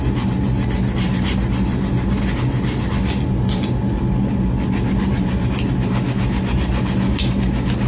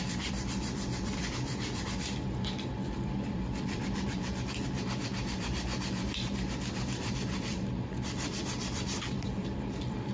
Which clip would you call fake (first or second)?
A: second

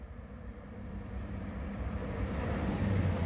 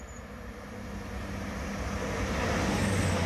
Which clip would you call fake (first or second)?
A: first